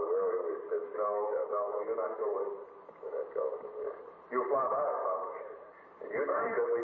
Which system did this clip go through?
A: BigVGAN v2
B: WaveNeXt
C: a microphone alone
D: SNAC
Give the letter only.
A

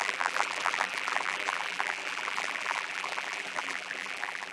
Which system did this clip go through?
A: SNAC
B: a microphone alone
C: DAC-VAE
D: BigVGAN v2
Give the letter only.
D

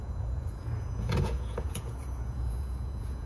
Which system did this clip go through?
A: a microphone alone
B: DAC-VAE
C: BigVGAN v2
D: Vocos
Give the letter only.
D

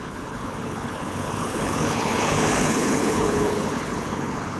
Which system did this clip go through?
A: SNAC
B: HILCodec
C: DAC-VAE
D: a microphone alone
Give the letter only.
B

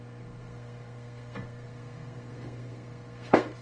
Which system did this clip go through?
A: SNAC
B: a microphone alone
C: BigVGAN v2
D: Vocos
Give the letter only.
A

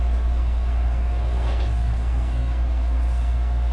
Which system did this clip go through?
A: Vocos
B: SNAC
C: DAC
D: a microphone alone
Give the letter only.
B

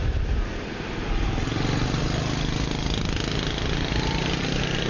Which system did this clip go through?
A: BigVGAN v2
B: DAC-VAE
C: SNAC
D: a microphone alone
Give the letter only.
D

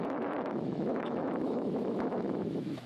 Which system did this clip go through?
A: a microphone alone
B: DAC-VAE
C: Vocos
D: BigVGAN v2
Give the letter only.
B